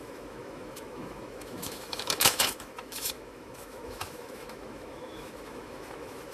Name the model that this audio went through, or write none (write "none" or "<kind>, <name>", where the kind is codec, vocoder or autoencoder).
autoencoder, DAC-VAE